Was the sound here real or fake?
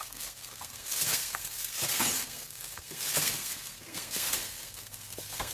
fake